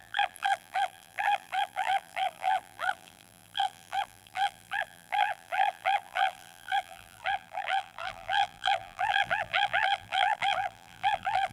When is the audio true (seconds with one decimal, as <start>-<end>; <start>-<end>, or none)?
none